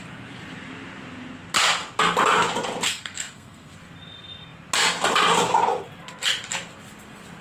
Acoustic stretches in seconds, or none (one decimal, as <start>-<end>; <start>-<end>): 0.0-2.9; 3.7-7.4